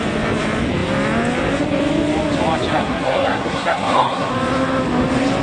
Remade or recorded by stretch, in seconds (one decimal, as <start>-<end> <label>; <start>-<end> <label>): 0.0-2.7 recorded; 2.7-4.3 remade; 4.3-5.4 recorded